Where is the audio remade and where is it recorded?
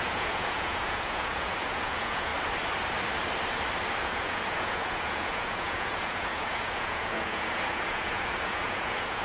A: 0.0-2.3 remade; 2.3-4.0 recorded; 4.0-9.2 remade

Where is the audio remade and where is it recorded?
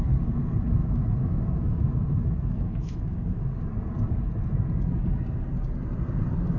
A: 0.0-0.8 recorded; 0.8-3.6 remade; 3.6-6.6 recorded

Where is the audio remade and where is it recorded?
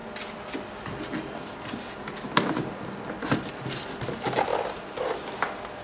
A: 0.0-3.5 recorded; 3.5-4.5 remade; 4.5-5.8 recorded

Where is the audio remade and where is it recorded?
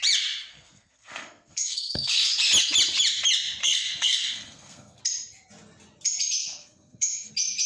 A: 0.0-0.5 recorded; 0.5-2.3 remade; 2.3-3.6 recorded; 3.6-5.0 remade; 5.0-6.4 recorded; 6.4-7.3 remade; 7.3-7.7 recorded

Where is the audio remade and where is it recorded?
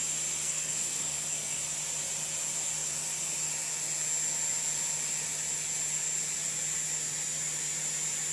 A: 0.0-0.4 recorded; 0.4-1.6 remade; 1.6-8.3 recorded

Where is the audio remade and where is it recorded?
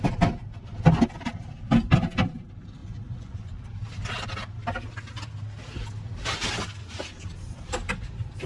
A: 0.0-2.8 recorded; 2.8-3.6 remade; 3.6-8.5 recorded